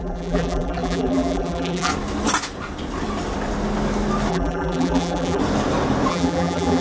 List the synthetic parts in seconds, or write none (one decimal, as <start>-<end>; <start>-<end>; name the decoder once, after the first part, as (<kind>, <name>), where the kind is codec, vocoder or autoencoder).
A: 0.0-1.9 (vocoder, BigVGAN v2); 4.3-5.4; 6.1-6.8

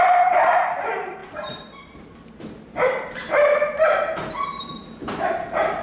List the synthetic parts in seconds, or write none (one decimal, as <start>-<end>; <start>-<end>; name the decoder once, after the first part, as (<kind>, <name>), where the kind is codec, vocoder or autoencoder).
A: 0.0-5.8 (vocoder, BigVGAN v2)